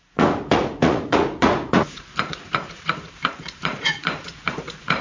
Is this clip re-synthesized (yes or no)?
yes